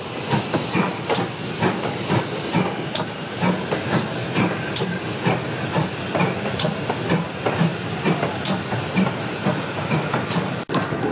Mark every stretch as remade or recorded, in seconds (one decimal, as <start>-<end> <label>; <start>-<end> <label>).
0.0-11.1 recorded